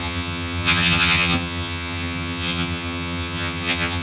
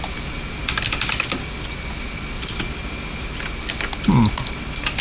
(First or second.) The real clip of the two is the second